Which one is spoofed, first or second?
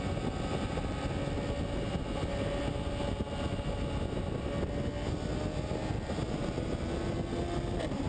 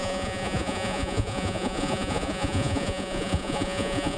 second